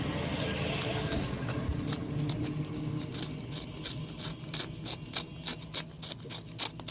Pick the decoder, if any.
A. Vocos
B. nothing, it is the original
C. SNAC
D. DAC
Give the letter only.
B